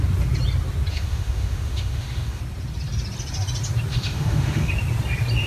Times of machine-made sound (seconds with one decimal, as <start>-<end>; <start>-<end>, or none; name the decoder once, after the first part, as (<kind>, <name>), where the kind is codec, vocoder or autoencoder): 0.9-2.4 (autoencoder, DAC-VAE); 3.9-4.7